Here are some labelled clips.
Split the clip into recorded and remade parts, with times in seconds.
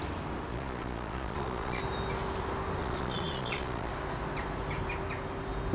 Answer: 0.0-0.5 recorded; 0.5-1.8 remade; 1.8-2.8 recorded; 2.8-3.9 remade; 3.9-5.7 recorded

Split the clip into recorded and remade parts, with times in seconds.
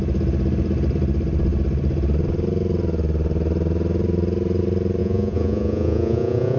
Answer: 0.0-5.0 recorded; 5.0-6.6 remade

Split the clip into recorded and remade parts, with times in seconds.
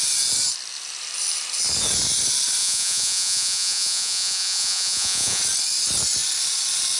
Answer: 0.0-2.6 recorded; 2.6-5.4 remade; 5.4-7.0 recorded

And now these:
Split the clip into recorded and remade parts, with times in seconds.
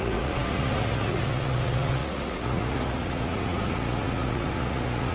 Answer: 0.0-5.1 remade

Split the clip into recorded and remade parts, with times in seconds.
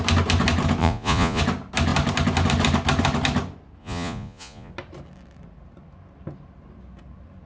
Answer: 0.0-0.8 recorded; 0.8-1.4 remade; 1.4-3.8 recorded; 3.8-4.7 remade; 4.7-7.5 recorded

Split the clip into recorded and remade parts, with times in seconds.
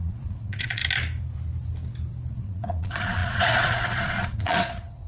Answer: 0.0-0.8 remade; 0.8-2.3 recorded; 2.3-5.1 remade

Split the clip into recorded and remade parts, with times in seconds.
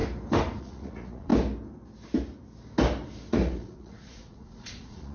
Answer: 0.0-0.6 recorded; 0.6-1.3 remade; 1.3-3.3 recorded; 3.3-5.1 remade